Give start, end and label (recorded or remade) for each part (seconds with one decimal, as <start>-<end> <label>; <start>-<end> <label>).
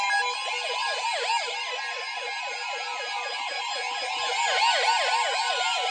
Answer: 0.0-5.9 recorded